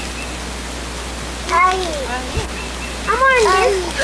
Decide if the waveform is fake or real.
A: real